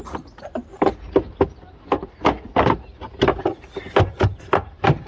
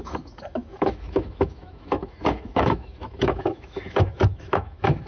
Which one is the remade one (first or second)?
second